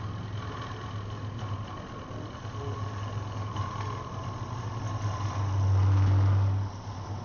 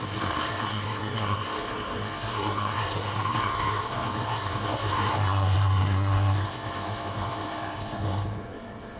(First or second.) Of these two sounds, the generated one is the second